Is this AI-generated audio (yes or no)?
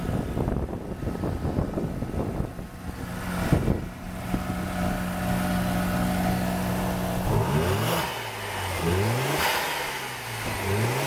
no